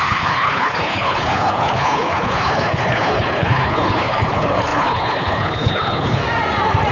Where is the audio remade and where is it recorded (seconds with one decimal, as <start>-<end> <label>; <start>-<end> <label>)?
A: 0.0-6.2 remade; 6.2-6.9 recorded